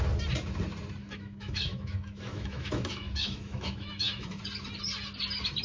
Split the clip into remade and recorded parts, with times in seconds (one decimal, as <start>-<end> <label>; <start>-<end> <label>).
0.0-1.0 recorded; 1.0-4.4 remade; 4.4-5.6 recorded